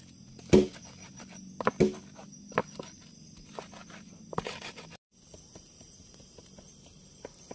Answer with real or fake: real